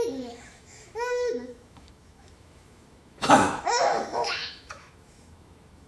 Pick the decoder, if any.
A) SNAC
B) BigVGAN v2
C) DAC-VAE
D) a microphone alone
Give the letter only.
C